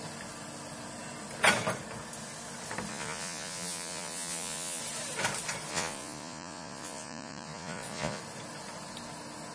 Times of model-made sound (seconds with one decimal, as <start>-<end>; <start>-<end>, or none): 2.9-4.8; 5.7-8.2